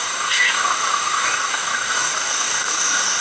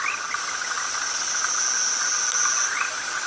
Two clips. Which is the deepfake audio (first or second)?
first